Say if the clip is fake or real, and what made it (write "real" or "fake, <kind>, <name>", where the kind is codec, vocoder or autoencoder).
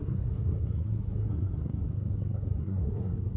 fake, codec, SNAC